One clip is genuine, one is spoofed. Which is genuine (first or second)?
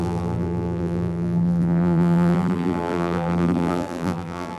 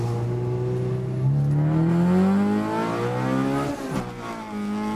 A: second